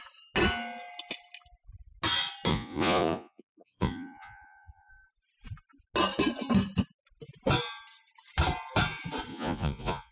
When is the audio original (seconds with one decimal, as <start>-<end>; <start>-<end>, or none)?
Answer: 0.0-2.5; 4.9-9.3